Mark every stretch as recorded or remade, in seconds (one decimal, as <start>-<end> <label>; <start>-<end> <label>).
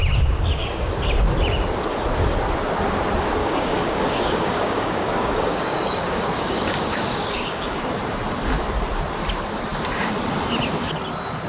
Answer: 0.0-0.6 recorded; 0.6-1.1 remade; 1.1-3.4 recorded; 3.4-7.8 remade; 7.8-11.5 recorded